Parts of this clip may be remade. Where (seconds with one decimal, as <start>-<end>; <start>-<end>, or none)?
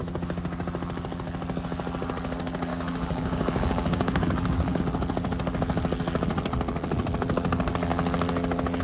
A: 2.7-4.8